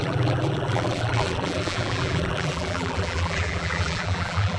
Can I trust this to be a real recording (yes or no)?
no